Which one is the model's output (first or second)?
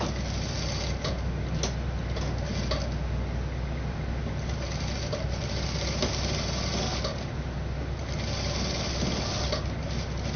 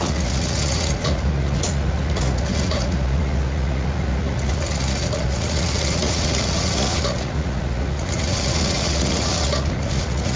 second